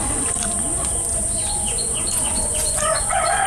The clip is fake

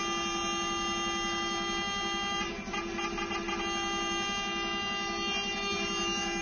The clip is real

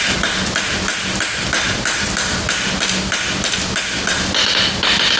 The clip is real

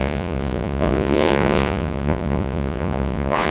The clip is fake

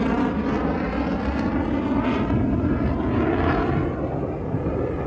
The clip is real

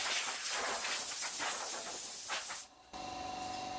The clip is real